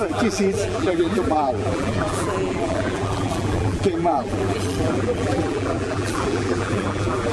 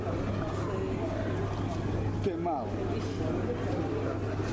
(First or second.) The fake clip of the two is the first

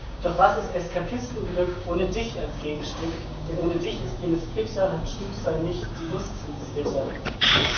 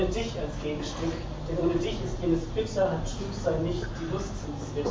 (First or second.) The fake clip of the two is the first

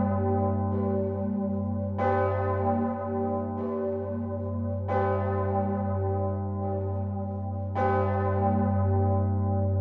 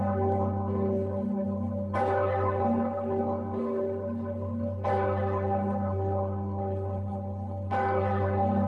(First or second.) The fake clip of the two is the second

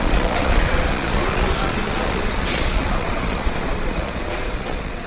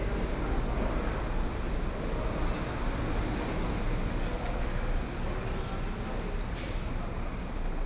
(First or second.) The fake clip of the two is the first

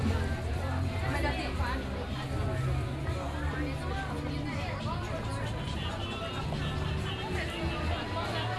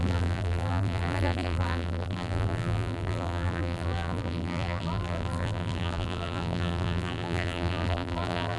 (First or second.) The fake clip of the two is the second